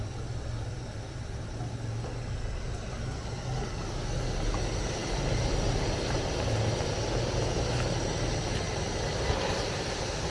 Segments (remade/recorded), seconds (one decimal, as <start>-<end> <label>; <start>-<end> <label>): 0.0-5.0 recorded; 5.0-6.1 remade; 6.1-10.3 recorded